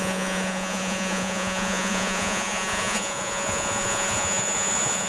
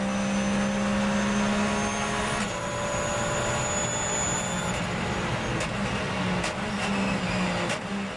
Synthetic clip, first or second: first